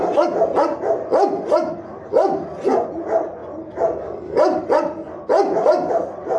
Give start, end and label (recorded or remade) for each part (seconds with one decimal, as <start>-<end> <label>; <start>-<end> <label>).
0.0-6.4 recorded